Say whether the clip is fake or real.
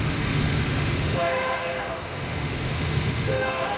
fake